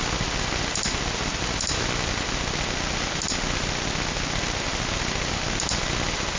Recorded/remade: recorded